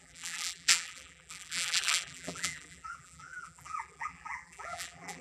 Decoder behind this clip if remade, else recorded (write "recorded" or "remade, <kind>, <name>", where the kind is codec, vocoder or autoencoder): remade, vocoder, BigVGAN v2